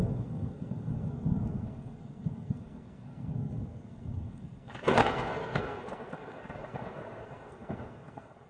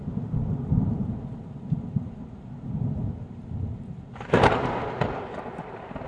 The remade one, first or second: first